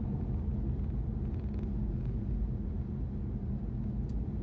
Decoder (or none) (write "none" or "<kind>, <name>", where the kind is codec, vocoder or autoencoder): none